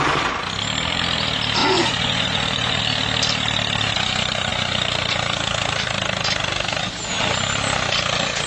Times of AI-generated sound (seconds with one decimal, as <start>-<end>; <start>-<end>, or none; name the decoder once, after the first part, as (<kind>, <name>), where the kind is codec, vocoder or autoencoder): 1.6-2.8 (vocoder, Vocos)